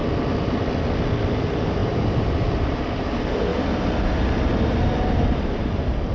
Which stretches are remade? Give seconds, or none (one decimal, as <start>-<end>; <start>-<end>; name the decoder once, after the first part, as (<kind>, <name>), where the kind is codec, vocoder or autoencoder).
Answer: 1.4-6.1 (vocoder, BigVGAN v2)

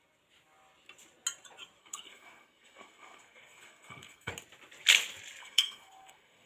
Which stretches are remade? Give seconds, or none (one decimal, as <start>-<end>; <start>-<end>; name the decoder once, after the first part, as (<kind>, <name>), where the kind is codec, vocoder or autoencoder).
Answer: 1.8-4.3 (codec, SNAC); 5.4-6.5

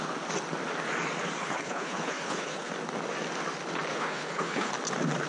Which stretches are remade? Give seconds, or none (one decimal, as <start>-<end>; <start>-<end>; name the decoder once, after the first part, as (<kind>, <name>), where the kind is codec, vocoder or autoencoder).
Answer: 1.4-2.7 (codec, HILCodec); 3.9-4.7

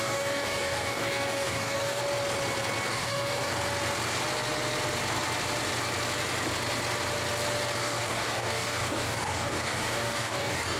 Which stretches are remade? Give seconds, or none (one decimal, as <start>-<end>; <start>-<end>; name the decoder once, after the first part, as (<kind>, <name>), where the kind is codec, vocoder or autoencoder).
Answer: 0.0-2.0 (codec, DAC); 2.9-3.5; 7.8-10.8

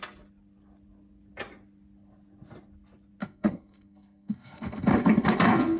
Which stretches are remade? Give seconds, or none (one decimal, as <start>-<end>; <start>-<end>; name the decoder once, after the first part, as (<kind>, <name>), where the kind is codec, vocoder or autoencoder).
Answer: 3.2-5.8 (codec, SNAC)

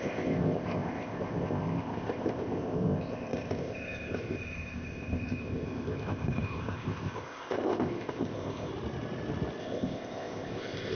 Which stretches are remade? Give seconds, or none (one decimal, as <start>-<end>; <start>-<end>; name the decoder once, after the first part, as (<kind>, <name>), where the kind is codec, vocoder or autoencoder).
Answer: 0.0-8.7 (codec, ZipCodec); 9.6-11.0

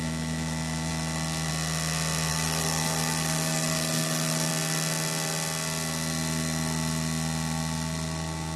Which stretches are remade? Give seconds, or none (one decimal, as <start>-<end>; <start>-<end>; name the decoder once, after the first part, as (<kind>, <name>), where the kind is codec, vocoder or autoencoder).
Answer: 2.3-4.5 (codec, DAC)

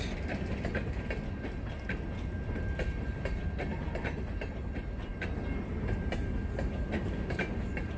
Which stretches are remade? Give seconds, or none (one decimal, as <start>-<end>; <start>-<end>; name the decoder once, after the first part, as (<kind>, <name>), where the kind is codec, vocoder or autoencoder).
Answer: none